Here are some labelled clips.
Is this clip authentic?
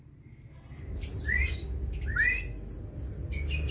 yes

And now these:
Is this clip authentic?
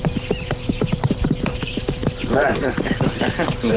no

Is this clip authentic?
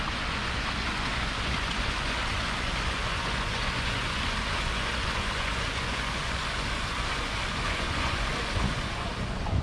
no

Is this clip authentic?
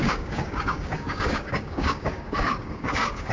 no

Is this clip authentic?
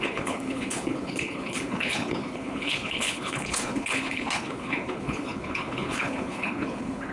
no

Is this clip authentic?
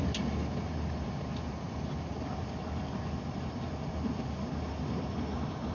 yes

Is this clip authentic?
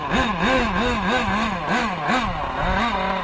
yes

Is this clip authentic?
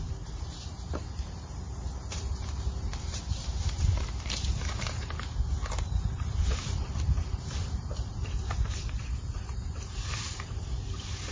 no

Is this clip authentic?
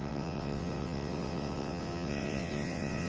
no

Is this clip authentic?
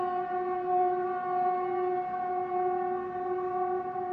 no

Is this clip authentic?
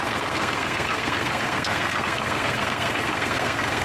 no